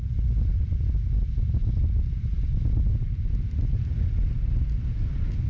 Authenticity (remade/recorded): recorded